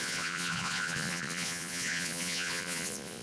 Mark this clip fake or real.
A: fake